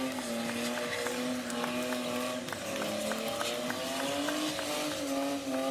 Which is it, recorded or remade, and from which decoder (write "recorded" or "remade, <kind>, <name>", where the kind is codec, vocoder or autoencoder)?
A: recorded